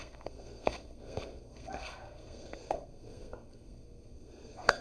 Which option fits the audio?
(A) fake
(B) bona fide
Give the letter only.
A